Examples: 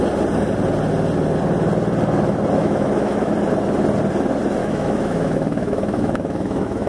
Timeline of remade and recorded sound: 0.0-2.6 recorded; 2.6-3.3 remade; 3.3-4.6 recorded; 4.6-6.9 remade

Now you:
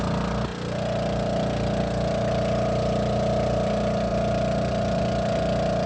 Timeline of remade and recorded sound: 0.0-5.9 recorded

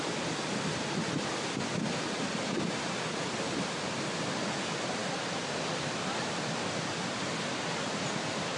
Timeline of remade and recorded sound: 0.0-8.6 recorded

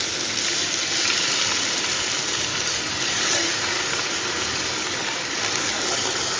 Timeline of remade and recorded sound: 0.0-2.5 recorded; 2.5-6.4 remade